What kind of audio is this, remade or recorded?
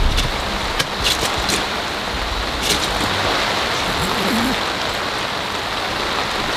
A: recorded